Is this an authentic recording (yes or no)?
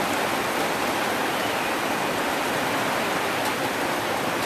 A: yes